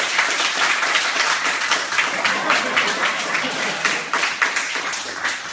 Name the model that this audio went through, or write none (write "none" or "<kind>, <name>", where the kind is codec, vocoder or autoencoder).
none